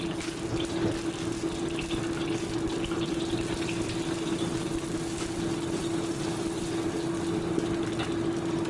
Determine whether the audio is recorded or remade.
recorded